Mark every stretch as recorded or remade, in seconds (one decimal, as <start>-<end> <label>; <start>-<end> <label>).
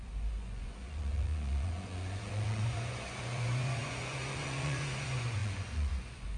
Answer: 0.0-6.4 remade